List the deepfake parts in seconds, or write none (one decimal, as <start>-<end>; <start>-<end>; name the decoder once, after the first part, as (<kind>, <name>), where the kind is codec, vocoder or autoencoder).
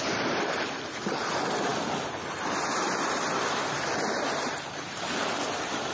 0.0-5.9 (vocoder, BigVGAN v2)